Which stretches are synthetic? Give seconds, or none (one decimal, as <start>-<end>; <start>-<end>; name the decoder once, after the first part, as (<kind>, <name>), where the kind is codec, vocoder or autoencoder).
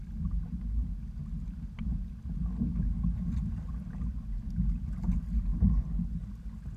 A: none